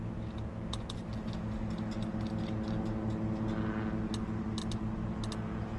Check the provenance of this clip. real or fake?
real